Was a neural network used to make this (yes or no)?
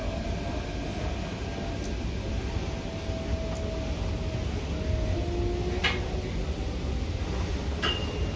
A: no